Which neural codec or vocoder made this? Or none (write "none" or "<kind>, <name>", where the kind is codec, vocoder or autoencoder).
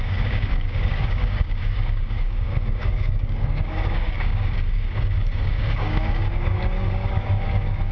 codec, DAC